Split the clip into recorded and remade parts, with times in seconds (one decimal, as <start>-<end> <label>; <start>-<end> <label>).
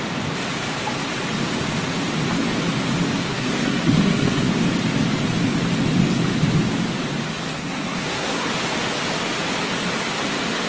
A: 0.0-3.3 recorded; 3.3-4.5 remade; 4.5-7.5 recorded; 7.5-8.5 remade; 8.5-10.7 recorded